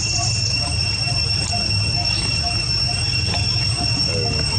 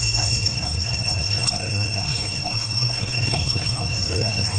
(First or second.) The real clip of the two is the first